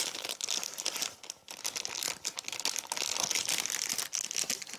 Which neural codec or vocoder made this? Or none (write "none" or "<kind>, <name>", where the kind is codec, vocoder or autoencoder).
none